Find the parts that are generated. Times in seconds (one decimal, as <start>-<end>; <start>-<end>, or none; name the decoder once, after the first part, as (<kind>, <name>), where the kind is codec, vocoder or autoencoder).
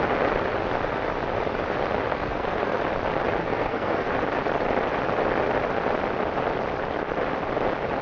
2.1-2.8 (codec, SNAC); 3.4-4.1